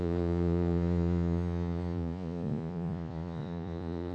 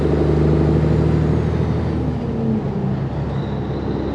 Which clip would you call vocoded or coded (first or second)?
first